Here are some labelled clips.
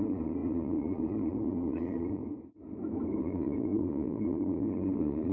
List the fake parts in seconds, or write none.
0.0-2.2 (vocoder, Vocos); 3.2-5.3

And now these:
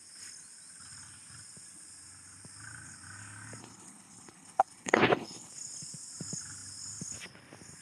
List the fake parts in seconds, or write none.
3.6-5.5 (codec, HILCodec)

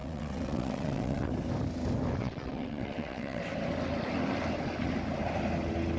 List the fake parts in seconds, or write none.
0.0-1.3 (vocoder, WaveNeXt); 2.2-3.4

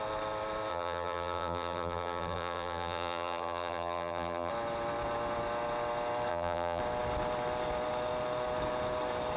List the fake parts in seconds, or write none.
0.7-4.5 (vocoder, BigVGAN v2); 6.3-6.8

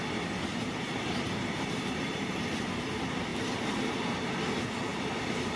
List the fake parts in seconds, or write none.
0.5-2.7 (vocoder, BigVGAN v2); 3.3-3.9; 4.9-5.6

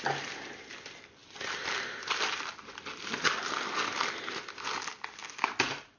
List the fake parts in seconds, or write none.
none

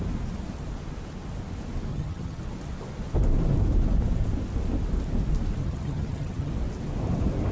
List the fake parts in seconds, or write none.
1.9-2.4 (vocoder, HiFi-GAN); 5.6-6.5